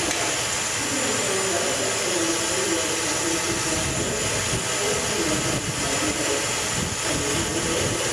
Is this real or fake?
real